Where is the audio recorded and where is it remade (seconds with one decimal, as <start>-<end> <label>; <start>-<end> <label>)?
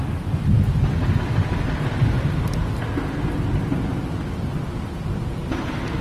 0.0-6.0 recorded